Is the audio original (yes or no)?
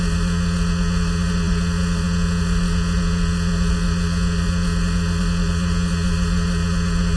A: no